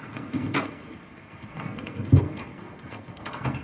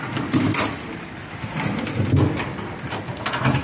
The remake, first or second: first